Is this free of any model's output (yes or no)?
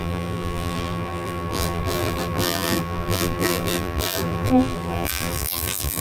no